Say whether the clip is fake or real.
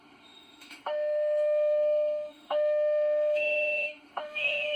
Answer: fake